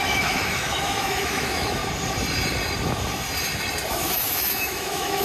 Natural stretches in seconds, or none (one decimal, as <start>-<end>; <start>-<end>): 1.8-3.9